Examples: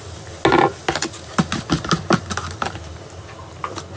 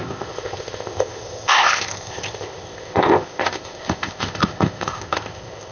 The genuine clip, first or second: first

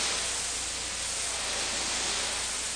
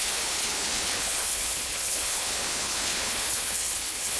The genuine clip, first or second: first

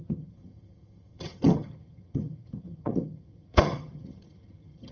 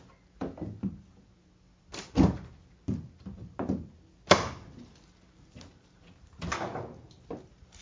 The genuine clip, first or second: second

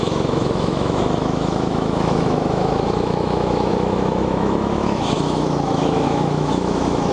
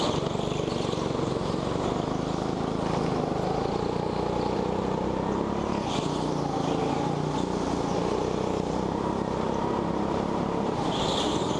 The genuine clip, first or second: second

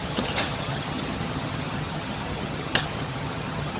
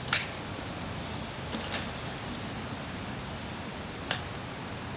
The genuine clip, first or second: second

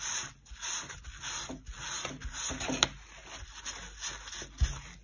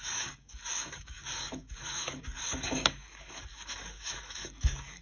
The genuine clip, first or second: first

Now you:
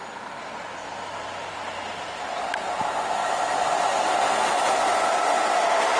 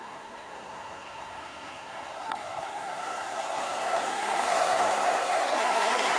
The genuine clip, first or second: first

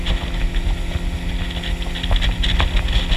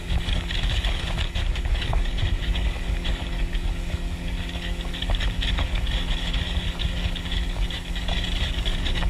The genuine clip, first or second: first